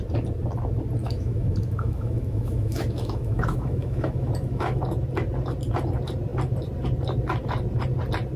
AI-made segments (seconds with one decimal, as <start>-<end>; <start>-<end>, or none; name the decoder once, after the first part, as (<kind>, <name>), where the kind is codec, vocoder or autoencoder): 1.0-4.8 (autoencoder, DAC-VAE)